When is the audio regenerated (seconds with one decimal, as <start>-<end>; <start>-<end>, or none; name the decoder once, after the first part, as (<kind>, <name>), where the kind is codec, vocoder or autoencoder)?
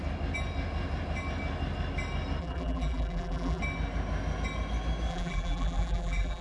2.4-3.6 (vocoder, BigVGAN v2); 5.1-6.4